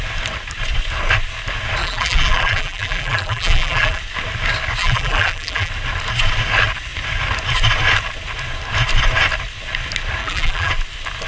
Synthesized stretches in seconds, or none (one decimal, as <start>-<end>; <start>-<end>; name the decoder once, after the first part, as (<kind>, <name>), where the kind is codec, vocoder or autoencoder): 1.8-4.0 (vocoder, BigVGAN v2); 4.8-5.7; 10.2-10.7